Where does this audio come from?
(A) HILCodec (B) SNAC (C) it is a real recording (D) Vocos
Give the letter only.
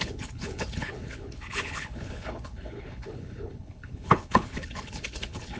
A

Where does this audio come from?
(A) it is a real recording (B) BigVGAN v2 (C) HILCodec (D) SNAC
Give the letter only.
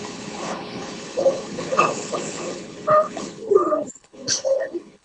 C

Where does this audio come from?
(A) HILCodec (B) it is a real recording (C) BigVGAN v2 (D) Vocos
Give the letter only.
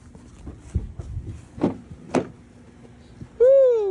B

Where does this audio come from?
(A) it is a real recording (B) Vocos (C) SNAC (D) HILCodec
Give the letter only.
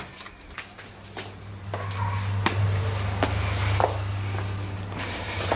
A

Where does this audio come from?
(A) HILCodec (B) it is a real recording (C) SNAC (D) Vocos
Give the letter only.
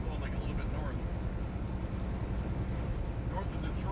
B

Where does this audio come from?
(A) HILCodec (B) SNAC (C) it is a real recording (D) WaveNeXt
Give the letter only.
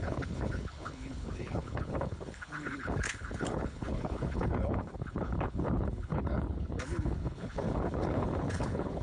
A